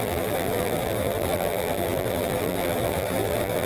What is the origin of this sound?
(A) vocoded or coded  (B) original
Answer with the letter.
A